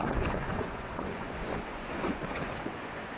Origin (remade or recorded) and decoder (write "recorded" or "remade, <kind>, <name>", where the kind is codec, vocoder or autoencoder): remade, vocoder, Vocos